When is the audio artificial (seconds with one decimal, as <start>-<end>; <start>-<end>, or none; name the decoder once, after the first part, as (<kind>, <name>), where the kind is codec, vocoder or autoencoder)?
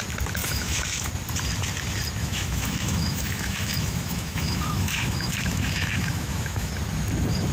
0.4-1.1 (autoencoder, DAC-VAE); 2.2-6.7